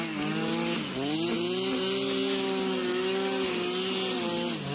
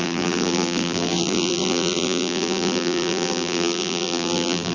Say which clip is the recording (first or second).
first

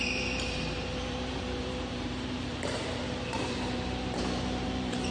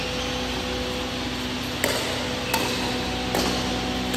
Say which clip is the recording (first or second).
second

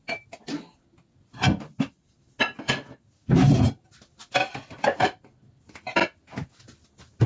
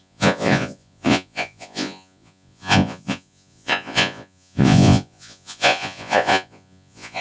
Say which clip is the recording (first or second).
first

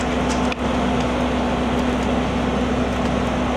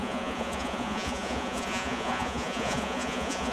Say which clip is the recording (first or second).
first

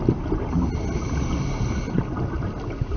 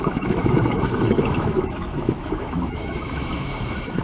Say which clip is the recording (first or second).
first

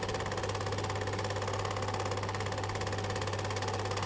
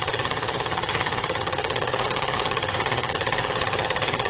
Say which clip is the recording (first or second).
first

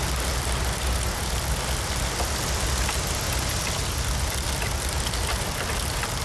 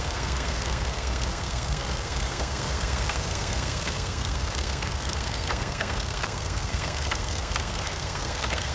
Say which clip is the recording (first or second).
first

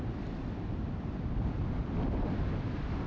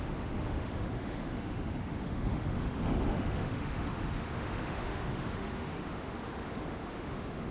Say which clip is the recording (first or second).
first